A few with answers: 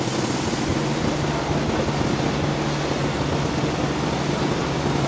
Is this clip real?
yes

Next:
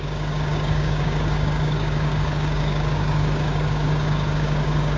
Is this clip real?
no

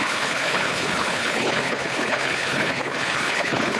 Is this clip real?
no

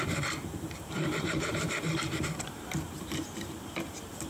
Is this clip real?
no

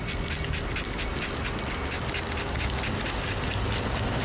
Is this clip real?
yes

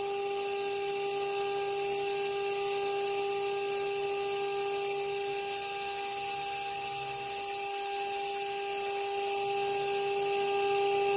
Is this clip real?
yes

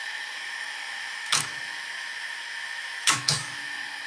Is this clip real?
no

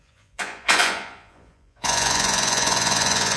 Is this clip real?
no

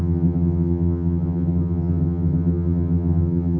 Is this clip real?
no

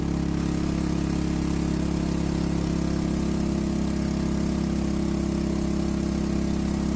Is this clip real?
yes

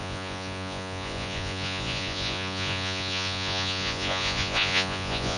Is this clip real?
no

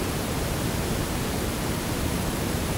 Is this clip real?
no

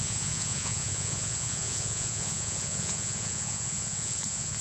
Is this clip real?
no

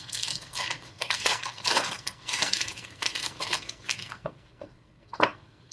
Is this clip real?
no